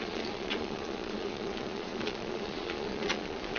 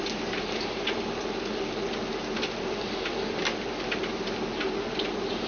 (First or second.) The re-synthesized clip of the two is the first